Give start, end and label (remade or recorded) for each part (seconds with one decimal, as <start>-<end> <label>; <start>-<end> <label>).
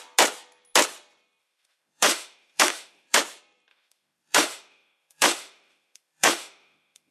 0.0-1.4 recorded; 1.4-3.2 remade; 3.2-3.7 recorded; 3.7-7.1 remade